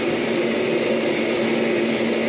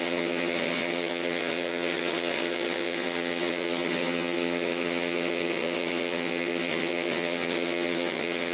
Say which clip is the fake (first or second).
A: second